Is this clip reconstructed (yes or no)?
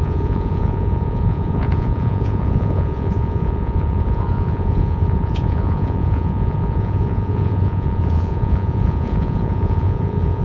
yes